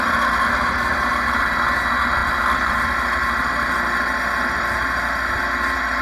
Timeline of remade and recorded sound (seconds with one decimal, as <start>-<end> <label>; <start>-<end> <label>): 0.0-6.0 recorded